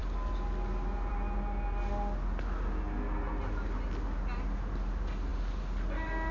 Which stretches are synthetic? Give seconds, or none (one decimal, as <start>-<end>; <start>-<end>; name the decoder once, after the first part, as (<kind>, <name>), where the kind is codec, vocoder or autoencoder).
none